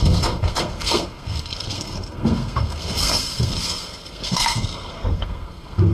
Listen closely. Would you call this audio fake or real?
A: fake